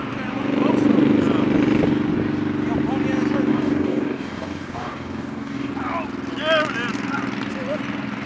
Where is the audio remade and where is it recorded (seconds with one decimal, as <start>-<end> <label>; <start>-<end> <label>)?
0.0-3.5 recorded; 3.5-5.7 remade; 5.7-8.3 recorded